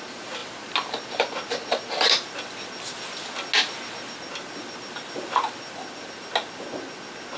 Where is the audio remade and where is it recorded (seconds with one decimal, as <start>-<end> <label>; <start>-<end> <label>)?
0.0-7.4 recorded